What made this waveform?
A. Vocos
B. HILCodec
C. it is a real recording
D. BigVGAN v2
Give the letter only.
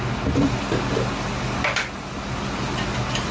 C